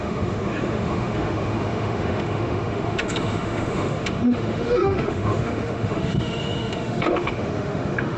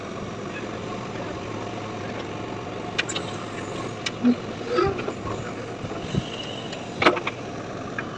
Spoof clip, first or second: first